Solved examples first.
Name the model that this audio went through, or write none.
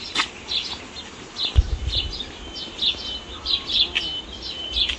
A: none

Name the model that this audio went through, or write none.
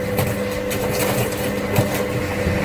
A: none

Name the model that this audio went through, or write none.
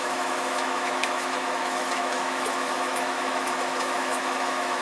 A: autoencoder, DAC-VAE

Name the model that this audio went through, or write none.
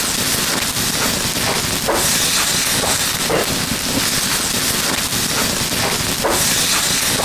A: none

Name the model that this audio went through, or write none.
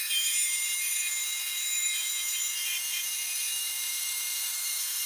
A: autoencoder, DAC-VAE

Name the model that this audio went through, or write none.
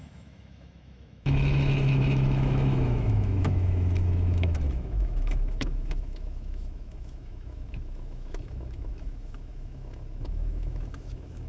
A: autoencoder, DAC-VAE